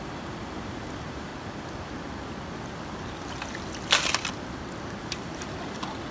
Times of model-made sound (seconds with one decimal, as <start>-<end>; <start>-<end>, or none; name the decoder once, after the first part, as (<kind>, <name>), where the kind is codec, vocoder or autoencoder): 0.0-1.3 (vocoder, BigVGAN v2); 5.0-6.1